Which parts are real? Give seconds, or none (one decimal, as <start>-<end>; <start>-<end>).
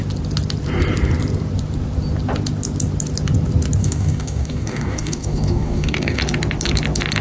0.0-3.8; 6.2-7.2